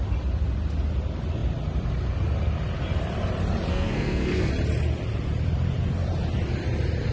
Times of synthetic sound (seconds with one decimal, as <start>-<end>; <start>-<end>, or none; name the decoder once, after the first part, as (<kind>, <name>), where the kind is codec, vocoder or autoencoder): 3.7-4.5 (codec, SNAC)